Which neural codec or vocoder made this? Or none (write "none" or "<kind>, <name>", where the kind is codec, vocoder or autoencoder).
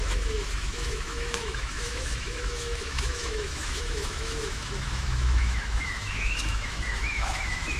autoencoder, DAC-VAE